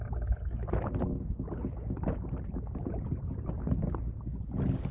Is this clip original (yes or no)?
yes